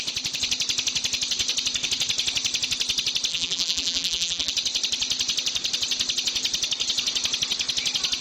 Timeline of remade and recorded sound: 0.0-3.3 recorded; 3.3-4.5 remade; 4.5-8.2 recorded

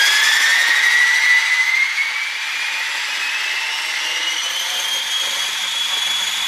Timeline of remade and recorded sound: 0.0-6.5 remade

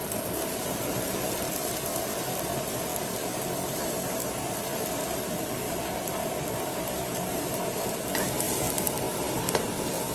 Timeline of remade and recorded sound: 0.0-1.3 remade; 1.3-5.6 recorded; 5.6-6.1 remade; 6.1-10.1 recorded

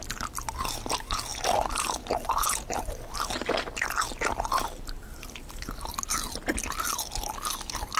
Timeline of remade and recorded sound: 0.0-8.0 recorded

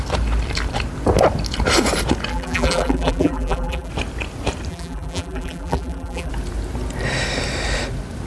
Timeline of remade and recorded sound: 0.0-2.3 recorded; 2.3-3.9 remade; 3.9-4.7 recorded; 4.7-6.3 remade; 6.3-8.3 recorded

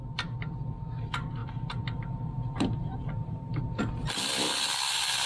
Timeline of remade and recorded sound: 0.0-1.4 recorded; 1.4-3.6 remade; 3.6-5.3 recorded

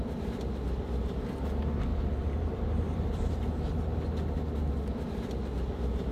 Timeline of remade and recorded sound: 0.0-1.9 recorded; 1.9-3.7 remade; 3.7-6.1 recorded